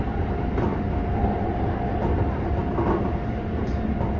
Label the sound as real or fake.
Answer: real